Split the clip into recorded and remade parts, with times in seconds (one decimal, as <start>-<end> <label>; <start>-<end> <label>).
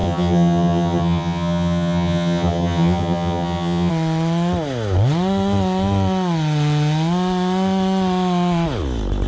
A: 0.0-3.9 remade; 3.9-9.3 recorded